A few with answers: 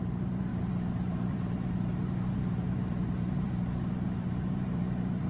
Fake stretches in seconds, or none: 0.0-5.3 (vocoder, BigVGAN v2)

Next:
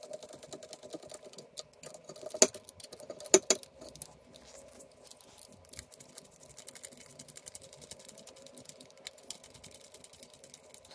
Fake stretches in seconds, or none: 7.1-9.0 (vocoder, BigVGAN v2)